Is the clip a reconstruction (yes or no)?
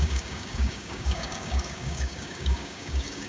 yes